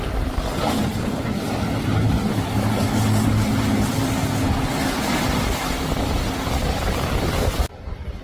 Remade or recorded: recorded